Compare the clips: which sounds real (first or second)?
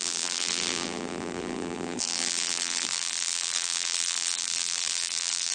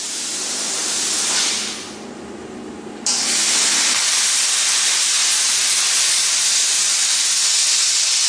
second